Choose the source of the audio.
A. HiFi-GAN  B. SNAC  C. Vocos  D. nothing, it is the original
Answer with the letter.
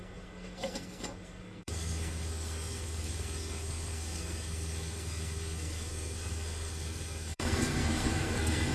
B